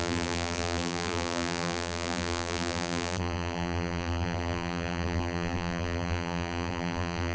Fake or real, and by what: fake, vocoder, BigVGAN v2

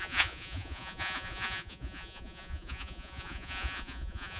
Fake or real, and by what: fake, vocoder, Vocos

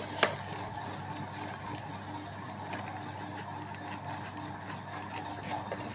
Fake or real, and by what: real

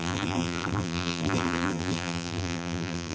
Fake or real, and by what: fake, vocoder, BigVGAN v2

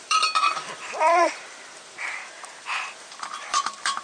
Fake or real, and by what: fake, vocoder, BigVGAN v2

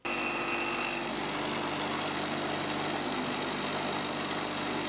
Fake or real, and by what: real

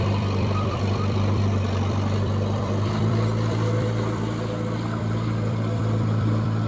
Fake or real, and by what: fake, vocoder, BigVGAN v2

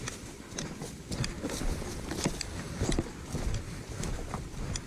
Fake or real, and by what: real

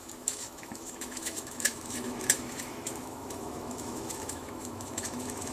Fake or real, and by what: fake, autoencoder, DAC-VAE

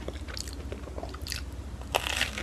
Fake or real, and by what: real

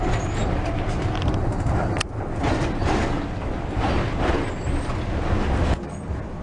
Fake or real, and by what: real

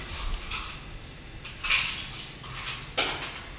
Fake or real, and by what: real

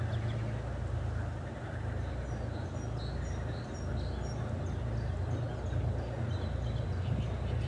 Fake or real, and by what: real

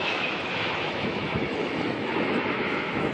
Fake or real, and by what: fake, autoencoder, DAC-VAE